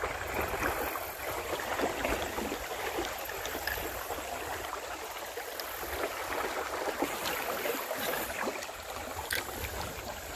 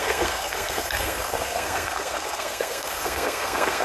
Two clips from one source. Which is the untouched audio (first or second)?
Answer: first